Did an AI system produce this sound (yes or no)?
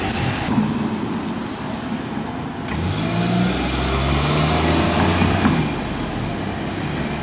no